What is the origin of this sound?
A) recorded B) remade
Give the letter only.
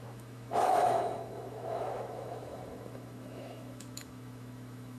B